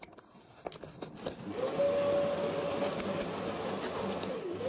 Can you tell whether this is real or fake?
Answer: real